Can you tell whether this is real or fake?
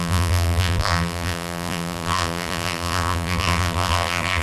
fake